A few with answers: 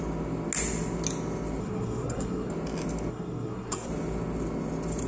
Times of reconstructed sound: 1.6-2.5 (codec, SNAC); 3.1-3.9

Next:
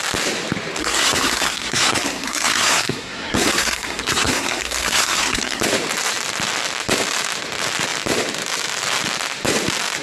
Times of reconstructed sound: 0.8-5.6 (codec, SNAC)

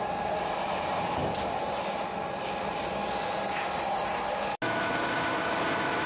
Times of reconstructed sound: none